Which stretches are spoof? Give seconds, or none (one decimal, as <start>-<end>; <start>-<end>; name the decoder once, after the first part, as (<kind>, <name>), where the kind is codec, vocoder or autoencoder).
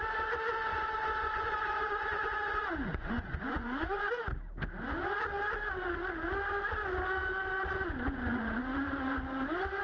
0.7-4.2 (vocoder, Vocos); 7.8-8.5